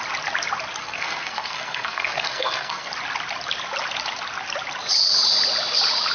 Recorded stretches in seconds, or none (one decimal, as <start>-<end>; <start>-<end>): 0.0-0.8; 2.9-6.1